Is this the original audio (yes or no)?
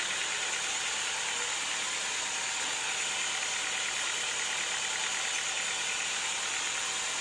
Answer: yes